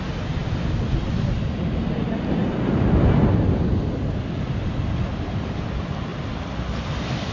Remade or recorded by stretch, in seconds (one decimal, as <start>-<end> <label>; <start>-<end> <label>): 0.0-6.1 recorded; 6.1-6.6 remade; 6.6-7.3 recorded